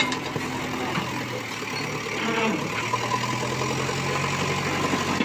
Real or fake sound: real